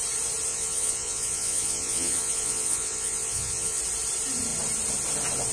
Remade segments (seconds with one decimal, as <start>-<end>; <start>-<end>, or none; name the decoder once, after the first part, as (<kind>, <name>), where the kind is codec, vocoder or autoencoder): 0.5-3.8 (vocoder, Vocos)

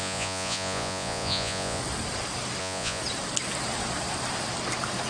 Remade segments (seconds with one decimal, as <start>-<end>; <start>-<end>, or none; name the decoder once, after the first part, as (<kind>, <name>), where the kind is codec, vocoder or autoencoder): 0.0-1.8 (vocoder, Vocos); 2.6-3.0

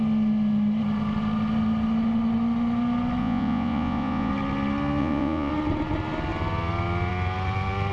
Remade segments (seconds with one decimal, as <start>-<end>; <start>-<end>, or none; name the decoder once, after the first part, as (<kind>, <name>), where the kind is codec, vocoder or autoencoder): 3.2-4.3 (vocoder, Vocos); 5.0-5.5

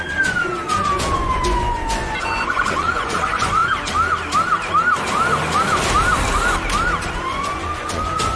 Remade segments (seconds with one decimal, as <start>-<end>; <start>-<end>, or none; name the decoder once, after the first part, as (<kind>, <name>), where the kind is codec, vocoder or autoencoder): 0.0-3.6 (vocoder, Vocos); 7.1-8.4